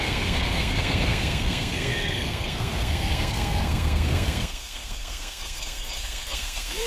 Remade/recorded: remade